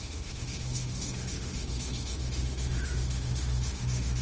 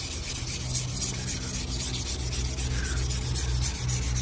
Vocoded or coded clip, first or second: first